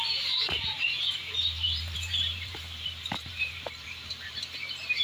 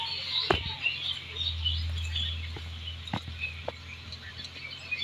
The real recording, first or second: second